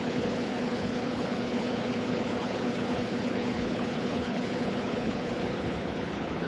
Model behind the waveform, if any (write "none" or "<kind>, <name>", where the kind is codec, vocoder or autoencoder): codec, HILCodec